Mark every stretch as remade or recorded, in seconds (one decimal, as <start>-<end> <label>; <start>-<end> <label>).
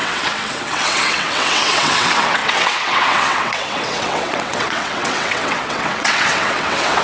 0.0-7.0 remade